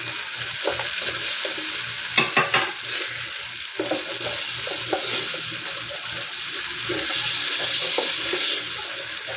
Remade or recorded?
recorded